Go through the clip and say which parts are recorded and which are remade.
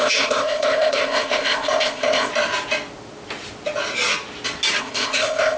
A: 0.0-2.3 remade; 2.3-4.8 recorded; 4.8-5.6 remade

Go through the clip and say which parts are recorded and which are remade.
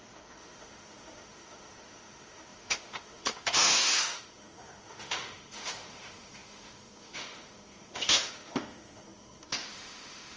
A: 0.0-10.4 remade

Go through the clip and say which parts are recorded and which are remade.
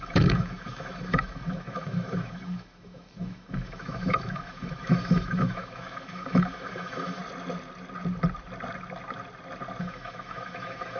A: 0.0-7.2 remade; 7.2-9.8 recorded; 9.8-11.0 remade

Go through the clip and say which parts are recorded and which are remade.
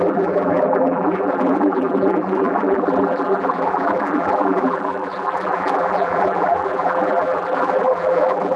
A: 0.0-8.6 remade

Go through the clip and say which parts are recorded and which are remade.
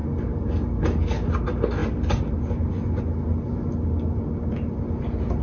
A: 0.0-5.4 recorded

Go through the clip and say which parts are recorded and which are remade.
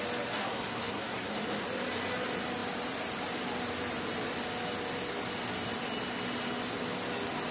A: 0.0-0.4 recorded; 0.4-1.6 remade; 1.6-7.5 recorded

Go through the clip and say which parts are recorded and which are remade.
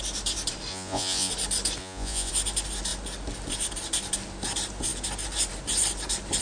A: 0.0-0.7 recorded; 0.7-1.3 remade; 1.3-1.8 recorded; 1.8-2.3 remade; 2.3-6.4 recorded